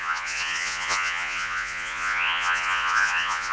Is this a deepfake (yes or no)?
yes